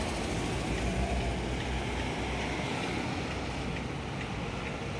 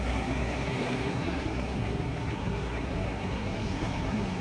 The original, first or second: first